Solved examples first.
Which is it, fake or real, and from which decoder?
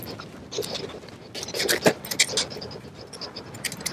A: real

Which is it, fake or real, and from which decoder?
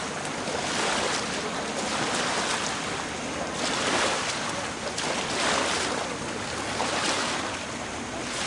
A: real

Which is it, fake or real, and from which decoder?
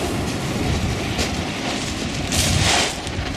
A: fake, vocoder, BigVGAN v2